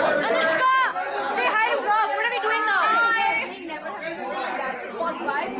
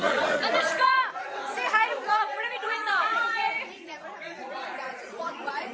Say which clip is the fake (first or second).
second